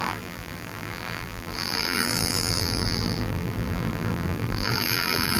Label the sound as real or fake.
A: fake